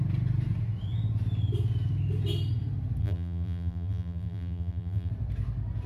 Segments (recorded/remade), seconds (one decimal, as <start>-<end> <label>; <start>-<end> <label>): 0.0-3.0 recorded; 3.0-5.1 remade; 5.1-5.9 recorded